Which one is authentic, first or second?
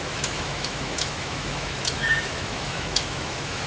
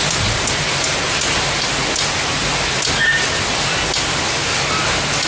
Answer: second